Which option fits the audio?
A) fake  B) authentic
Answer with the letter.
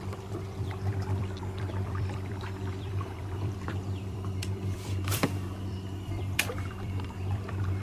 A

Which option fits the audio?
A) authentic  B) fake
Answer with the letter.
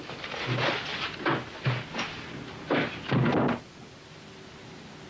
A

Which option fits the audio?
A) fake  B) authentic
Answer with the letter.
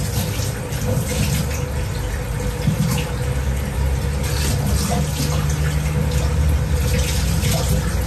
B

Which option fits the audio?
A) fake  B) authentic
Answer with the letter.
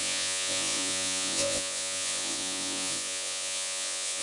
A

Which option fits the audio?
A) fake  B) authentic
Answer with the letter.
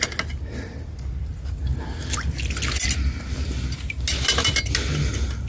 B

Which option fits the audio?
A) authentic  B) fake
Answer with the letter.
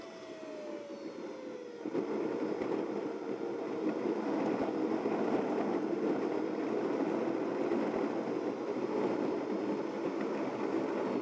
A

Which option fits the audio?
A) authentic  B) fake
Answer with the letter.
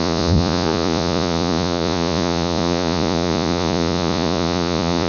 B